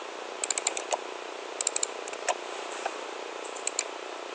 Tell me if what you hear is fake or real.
real